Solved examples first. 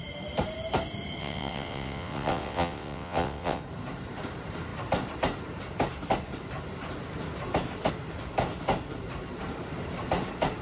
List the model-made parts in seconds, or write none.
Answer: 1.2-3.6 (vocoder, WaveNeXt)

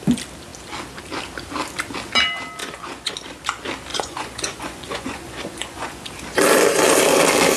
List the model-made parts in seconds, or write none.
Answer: 2.6-3.1 (vocoder, Vocos); 3.9-6.1

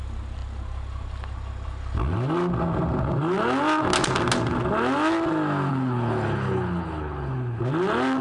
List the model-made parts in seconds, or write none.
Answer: 5.7-7.6 (codec, HILCodec)